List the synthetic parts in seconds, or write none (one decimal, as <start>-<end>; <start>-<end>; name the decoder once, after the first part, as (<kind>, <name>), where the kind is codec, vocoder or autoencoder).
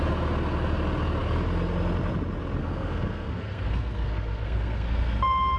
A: 2.6-5.6 (codec, SNAC)